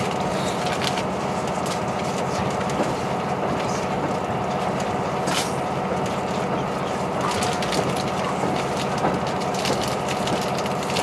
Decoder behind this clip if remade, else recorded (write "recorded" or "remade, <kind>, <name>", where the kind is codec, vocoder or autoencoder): recorded